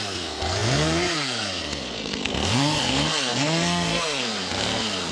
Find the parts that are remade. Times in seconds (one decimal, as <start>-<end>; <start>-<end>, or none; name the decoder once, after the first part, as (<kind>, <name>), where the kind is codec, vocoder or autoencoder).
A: 0.0-5.1 (codec, SNAC)